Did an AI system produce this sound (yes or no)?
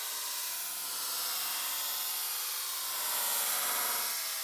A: no